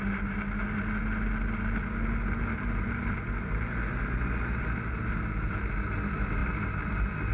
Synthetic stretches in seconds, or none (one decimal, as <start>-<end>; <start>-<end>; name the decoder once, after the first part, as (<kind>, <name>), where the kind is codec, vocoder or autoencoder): none